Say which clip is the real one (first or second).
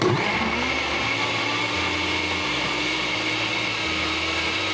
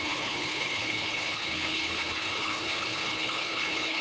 first